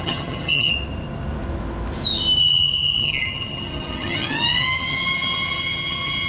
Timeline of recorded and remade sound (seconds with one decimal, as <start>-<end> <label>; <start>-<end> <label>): 0.0-0.7 remade; 0.7-2.4 recorded; 2.4-6.3 remade

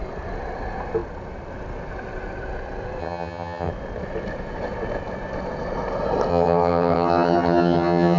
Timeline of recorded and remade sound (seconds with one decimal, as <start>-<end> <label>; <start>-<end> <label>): 0.0-3.0 recorded; 3.0-3.7 remade; 3.7-6.3 recorded; 6.3-8.2 remade

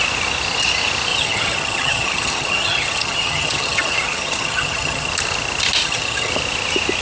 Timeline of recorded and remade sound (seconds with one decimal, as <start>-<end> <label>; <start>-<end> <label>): 0.0-1.1 recorded; 1.1-5.1 remade; 5.1-5.8 recorded; 5.8-6.3 remade; 6.3-7.0 recorded

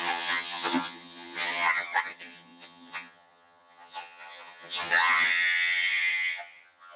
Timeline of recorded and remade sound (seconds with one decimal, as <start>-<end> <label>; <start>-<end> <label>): 0.0-7.0 remade

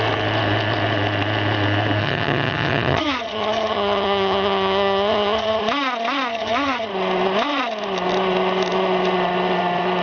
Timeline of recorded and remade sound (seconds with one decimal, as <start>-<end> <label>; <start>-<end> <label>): 0.0-2.0 recorded; 2.0-5.6 remade; 5.6-6.3 recorded; 6.3-6.9 remade; 6.9-10.0 recorded